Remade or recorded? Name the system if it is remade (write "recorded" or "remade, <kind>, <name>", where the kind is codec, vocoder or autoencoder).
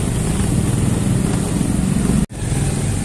recorded